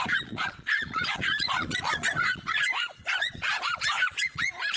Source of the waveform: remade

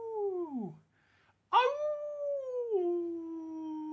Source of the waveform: recorded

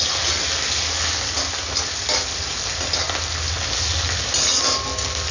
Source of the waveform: recorded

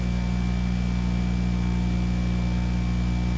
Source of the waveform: recorded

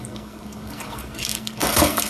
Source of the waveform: remade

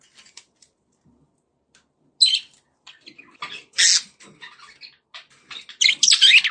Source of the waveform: recorded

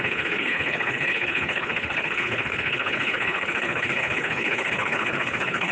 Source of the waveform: remade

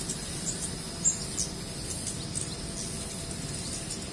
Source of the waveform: recorded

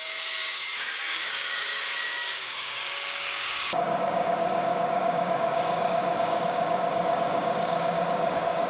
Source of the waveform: remade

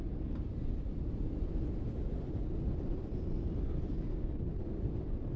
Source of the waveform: recorded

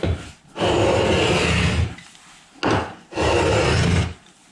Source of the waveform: recorded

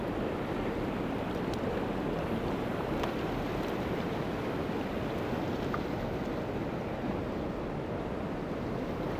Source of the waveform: recorded